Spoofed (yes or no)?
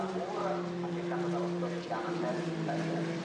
yes